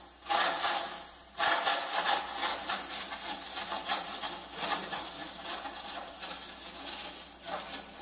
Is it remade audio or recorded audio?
recorded